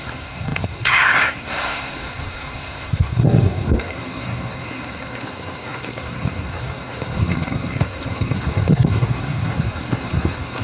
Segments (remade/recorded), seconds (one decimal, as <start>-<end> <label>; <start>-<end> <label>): 0.0-10.6 remade